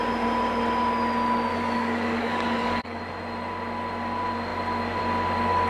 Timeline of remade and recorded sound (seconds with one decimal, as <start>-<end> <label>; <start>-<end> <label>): 0.0-1.5 recorded; 1.5-3.0 remade; 3.0-5.7 recorded

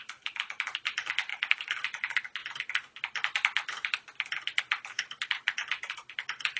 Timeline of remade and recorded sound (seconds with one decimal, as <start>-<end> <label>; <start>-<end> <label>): 0.0-1.3 recorded; 1.3-1.8 remade; 1.8-6.6 recorded

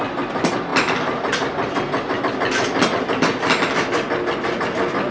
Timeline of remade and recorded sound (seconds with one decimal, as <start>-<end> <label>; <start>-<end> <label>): 0.0-5.1 recorded

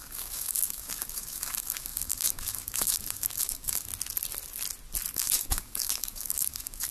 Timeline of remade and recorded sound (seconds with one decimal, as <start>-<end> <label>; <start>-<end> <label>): 0.0-3.9 remade; 3.9-5.1 recorded; 5.1-6.9 remade

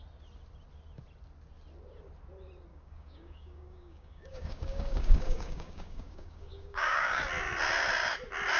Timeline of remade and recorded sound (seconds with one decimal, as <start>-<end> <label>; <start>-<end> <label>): 0.0-2.7 recorded; 2.7-7.2 remade; 7.2-8.6 recorded